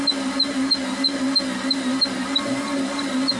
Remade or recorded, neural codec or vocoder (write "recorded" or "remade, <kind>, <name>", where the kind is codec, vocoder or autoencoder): recorded